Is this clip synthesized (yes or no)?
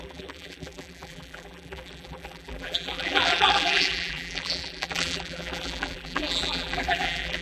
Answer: yes